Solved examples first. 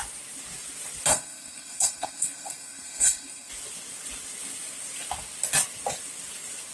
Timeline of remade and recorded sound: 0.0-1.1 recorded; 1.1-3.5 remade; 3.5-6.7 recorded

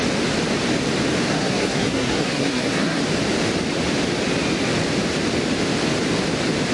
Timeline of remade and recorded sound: 0.0-1.3 recorded; 1.3-3.0 remade; 3.0-6.7 recorded

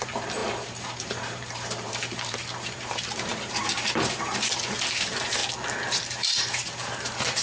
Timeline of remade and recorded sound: 0.0-5.4 remade; 5.4-6.0 recorded; 6.0-7.4 remade

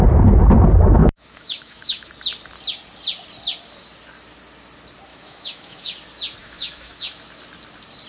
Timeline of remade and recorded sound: 0.0-1.0 recorded; 1.0-2.1 remade; 2.1-5.1 recorded; 5.1-6.0 remade; 6.0-6.4 recorded; 6.4-7.1 remade; 7.1-8.1 recorded

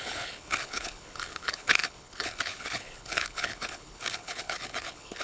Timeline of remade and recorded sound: 0.0-5.2 remade